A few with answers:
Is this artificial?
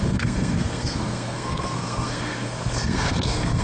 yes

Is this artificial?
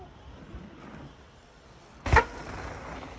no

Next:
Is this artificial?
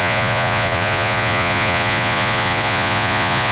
yes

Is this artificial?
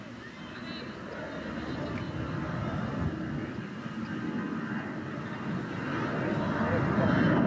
no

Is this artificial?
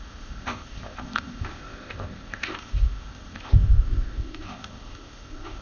yes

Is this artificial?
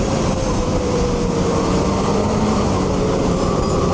yes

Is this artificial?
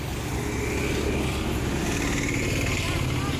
no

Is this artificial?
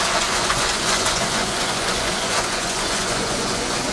yes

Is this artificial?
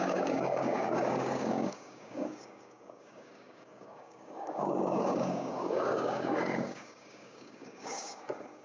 yes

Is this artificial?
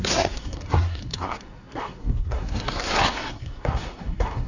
yes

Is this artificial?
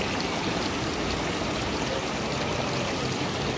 no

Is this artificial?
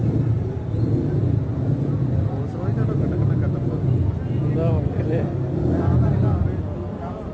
no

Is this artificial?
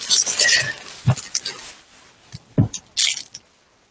no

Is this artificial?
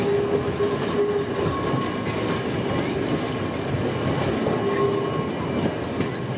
no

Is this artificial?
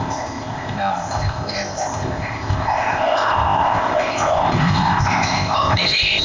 yes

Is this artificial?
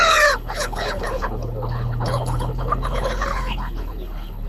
yes